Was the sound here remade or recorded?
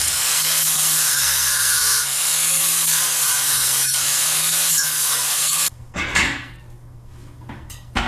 remade